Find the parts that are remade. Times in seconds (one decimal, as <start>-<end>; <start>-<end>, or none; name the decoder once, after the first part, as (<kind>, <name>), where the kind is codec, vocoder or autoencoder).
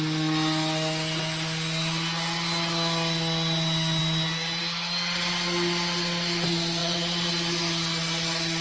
6.8-7.3 (vocoder, Vocos)